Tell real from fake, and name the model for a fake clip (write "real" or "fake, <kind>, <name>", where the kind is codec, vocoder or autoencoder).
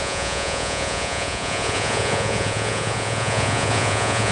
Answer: fake, vocoder, Vocos